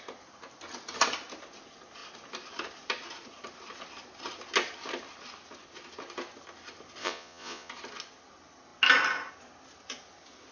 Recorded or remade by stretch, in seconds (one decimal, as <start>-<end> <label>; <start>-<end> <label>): 0.0-7.0 recorded; 7.0-7.7 remade; 7.7-10.5 recorded